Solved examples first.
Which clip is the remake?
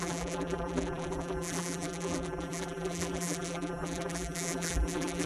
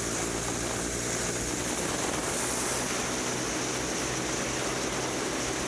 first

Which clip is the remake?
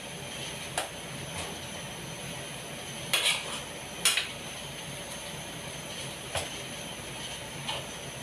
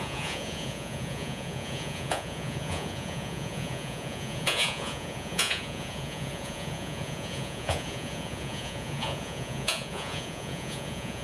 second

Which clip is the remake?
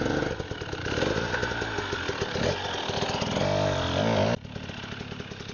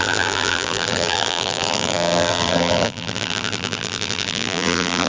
second